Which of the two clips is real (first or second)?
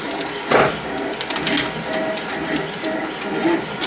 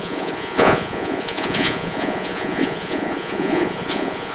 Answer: first